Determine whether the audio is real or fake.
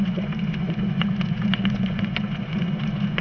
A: fake